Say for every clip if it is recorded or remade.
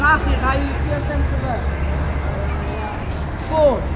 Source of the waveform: recorded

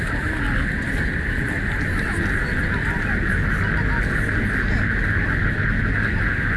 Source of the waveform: recorded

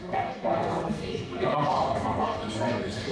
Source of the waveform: remade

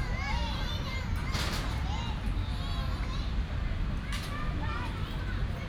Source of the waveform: recorded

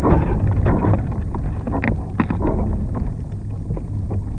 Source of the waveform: recorded